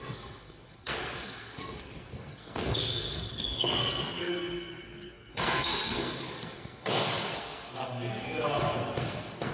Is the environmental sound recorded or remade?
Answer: remade